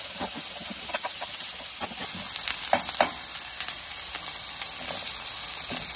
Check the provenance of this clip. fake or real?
real